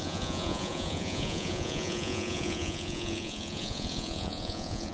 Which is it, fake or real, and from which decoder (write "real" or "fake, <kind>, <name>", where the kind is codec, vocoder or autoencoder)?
fake, vocoder, Vocos